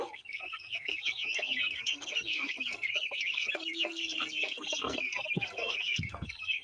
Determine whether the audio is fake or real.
fake